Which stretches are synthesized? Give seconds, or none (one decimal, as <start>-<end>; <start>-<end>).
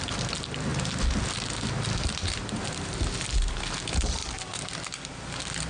none